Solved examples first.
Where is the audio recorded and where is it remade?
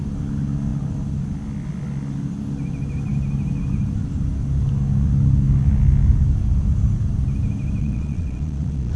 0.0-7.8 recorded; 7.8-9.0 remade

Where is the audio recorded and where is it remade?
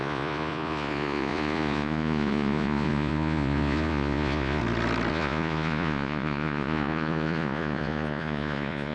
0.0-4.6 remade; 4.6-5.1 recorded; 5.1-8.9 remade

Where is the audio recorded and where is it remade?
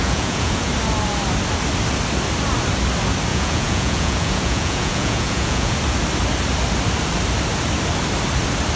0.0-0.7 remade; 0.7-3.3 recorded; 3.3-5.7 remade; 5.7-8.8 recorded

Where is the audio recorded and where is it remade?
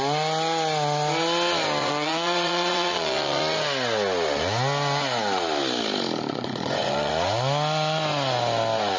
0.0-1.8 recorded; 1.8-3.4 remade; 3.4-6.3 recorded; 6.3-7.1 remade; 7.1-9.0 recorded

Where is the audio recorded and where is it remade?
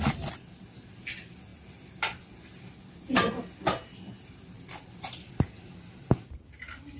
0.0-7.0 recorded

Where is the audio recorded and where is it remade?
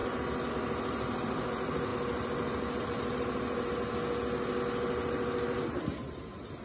0.0-6.6 recorded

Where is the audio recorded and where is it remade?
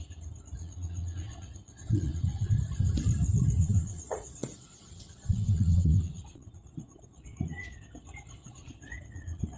0.0-0.6 recorded; 0.6-2.5 remade; 2.5-3.6 recorded; 3.6-7.8 remade; 7.8-8.4 recorded; 8.4-9.6 remade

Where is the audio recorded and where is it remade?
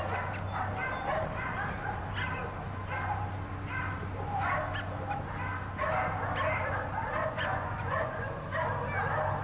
0.0-7.2 recorded; 7.2-8.4 remade; 8.4-9.4 recorded